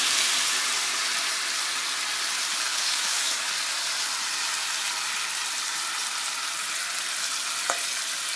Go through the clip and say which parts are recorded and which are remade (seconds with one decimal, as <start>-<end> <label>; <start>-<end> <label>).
0.0-2.7 recorded; 2.7-3.5 remade; 3.5-8.4 recorded